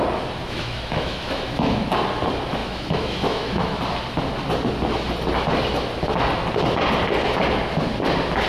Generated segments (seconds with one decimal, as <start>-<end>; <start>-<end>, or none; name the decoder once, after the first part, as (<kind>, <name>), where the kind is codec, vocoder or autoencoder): 0.4-1.9 (autoencoder, DAC-VAE); 2.6-3.8